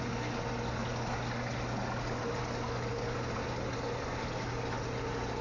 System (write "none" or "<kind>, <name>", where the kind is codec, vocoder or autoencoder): none